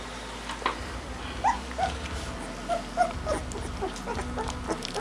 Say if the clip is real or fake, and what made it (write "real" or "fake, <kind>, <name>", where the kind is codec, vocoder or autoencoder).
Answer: real